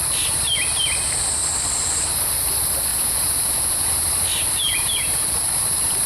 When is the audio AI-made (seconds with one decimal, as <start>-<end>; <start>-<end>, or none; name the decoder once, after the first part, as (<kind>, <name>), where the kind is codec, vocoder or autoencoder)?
2.9-3.9 (vocoder, Vocos); 4.6-5.2